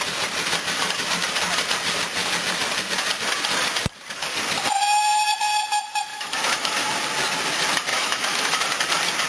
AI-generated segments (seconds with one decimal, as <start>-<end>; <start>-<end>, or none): 6.1-6.7; 7.9-8.6